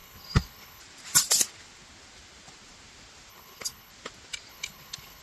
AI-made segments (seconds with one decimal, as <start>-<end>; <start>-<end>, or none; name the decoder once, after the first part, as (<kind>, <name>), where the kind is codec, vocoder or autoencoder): 0.0-0.8 (codec, HILCodec); 3.3-3.9; 4.5-5.2